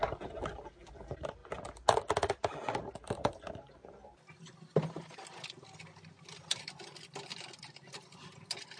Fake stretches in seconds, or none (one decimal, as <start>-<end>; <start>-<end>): none